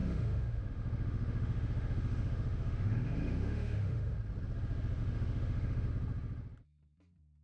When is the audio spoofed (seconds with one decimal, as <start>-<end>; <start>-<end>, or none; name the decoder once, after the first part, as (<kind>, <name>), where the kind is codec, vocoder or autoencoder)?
0.0-4.2 (autoencoder, DAC-VAE); 5.0-5.9